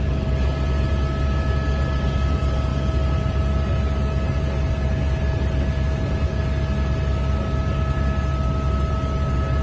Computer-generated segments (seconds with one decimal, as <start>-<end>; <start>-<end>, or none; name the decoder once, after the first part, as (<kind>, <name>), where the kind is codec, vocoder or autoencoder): none